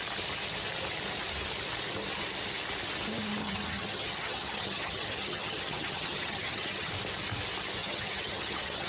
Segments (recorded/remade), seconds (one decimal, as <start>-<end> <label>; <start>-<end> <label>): 0.0-3.4 recorded; 3.4-6.9 remade; 6.9-7.8 recorded; 7.8-8.9 remade

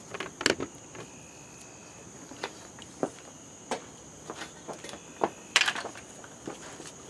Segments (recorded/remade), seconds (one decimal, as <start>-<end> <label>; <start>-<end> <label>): 0.0-1.8 recorded; 1.8-2.7 remade; 2.7-5.1 recorded; 5.1-6.6 remade; 6.6-7.1 recorded

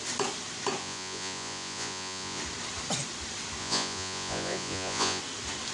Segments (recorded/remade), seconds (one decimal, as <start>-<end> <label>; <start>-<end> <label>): 0.0-0.8 recorded; 0.8-2.4 remade; 2.4-3.6 recorded; 3.6-5.2 remade; 5.2-5.7 recorded

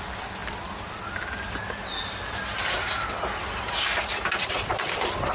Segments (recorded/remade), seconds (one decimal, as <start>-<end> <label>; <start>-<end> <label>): 0.0-4.7 recorded; 4.7-5.3 remade